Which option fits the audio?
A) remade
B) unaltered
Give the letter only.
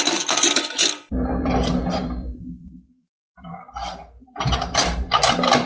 A